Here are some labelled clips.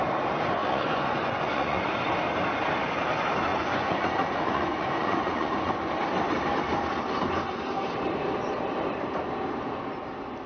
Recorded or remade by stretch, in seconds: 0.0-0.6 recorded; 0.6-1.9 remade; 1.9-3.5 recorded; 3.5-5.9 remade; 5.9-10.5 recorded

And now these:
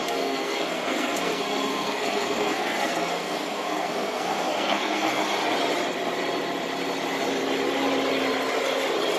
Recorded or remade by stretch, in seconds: 0.0-5.2 remade; 5.2-9.2 recorded

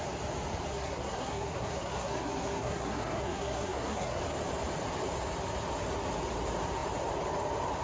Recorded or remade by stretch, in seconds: 0.0-0.7 recorded; 0.7-4.2 remade; 4.2-7.8 recorded

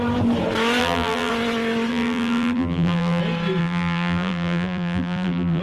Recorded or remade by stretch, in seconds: 0.0-0.8 recorded; 0.8-1.3 remade; 1.3-1.9 recorded; 1.9-3.2 remade; 3.2-3.6 recorded; 3.6-5.6 remade

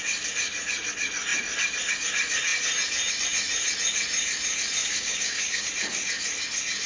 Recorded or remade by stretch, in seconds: 0.0-4.8 recorded; 4.8-5.7 remade; 5.7-6.9 recorded

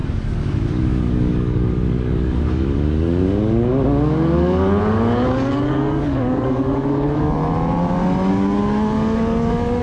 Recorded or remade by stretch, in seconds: 0.0-7.4 remade; 7.4-8.3 recorded; 8.3-9.8 remade

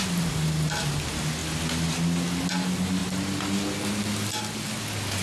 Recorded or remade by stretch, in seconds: 0.0-5.2 recorded

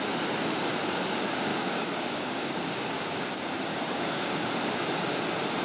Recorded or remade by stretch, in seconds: 0.0-1.5 recorded; 1.5-3.2 remade; 3.2-3.7 recorded; 3.7-4.3 remade; 4.3-5.6 recorded